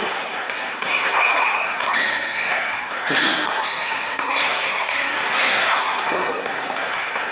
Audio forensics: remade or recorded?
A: remade